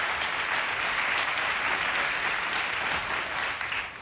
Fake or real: real